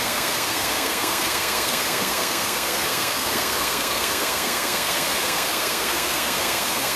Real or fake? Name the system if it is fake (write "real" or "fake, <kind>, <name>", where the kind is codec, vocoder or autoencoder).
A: fake, codec, SNAC